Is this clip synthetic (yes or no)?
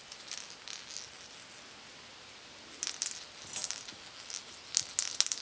no